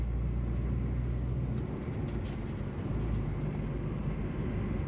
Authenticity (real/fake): real